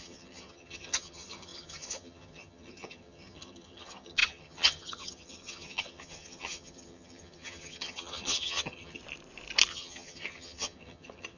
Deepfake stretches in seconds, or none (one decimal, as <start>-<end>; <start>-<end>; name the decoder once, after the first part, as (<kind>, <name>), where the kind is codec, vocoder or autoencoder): 0.0-9.0 (vocoder, HiFi-GAN); 9.7-11.4